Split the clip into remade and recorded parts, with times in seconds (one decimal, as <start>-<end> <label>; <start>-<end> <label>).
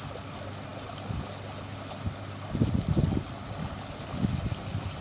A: 0.0-5.0 recorded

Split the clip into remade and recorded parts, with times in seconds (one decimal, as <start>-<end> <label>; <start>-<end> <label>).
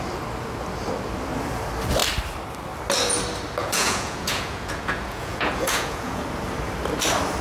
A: 0.0-3.6 recorded; 3.6-6.2 remade; 6.2-7.4 recorded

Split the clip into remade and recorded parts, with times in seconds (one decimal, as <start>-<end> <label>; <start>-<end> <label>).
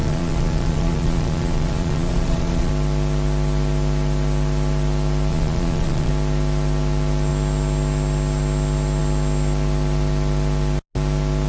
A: 0.0-2.7 remade; 2.7-5.3 recorded; 5.3-6.1 remade; 6.1-11.5 recorded